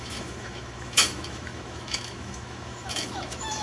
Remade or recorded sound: remade